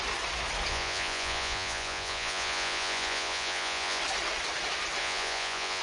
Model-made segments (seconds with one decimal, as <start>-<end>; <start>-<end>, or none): 0.7-4.0; 5.0-5.8